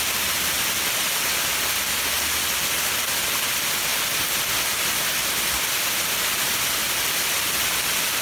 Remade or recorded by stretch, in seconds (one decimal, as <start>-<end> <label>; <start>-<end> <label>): 0.0-8.2 recorded